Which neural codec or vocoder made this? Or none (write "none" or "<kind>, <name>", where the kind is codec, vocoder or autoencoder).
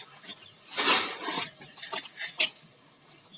none